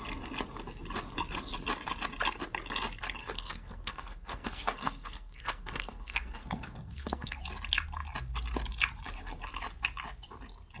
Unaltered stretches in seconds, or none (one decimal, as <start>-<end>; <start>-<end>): 0.0-3.2; 7.4-10.8